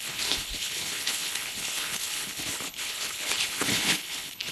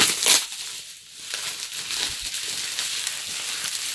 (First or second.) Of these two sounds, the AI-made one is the first